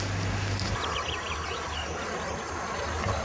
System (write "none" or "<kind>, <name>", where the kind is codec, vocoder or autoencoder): none